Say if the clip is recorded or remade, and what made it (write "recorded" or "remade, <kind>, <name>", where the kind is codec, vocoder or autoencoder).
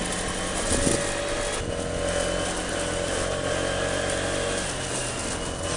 recorded